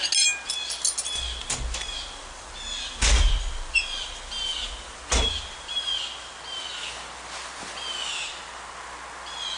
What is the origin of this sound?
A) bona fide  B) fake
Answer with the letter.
A